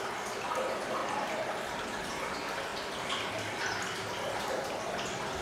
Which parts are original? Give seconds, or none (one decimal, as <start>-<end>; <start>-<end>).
0.0-5.4